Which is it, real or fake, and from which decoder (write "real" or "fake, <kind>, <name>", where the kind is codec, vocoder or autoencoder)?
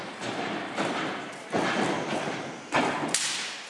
real